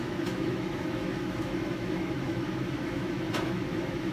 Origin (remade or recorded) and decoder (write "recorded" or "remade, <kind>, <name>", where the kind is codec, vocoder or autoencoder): remade, autoencoder, DAC-VAE